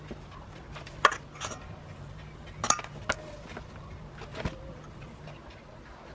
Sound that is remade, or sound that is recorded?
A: recorded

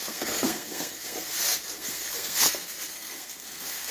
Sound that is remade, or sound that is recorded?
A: remade